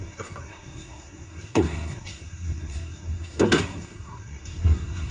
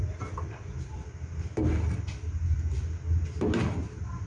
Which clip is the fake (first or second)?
first